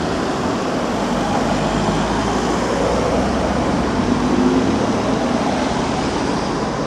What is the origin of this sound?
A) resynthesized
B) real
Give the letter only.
B